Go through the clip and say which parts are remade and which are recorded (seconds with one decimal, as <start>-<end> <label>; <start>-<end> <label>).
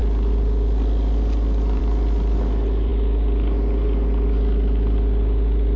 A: 0.0-5.8 recorded